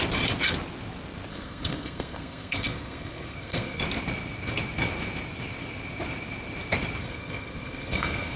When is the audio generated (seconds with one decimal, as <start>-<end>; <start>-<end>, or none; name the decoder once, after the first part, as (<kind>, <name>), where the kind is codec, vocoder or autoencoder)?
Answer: 1.3-3.8 (codec, SNAC); 7.0-8.4